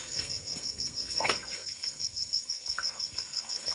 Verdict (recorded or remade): remade